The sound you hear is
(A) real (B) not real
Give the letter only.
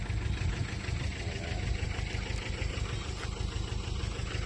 A